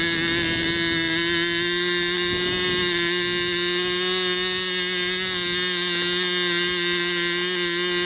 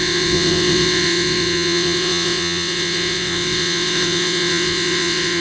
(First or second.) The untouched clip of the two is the first